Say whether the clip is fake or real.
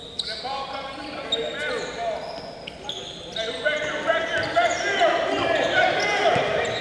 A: real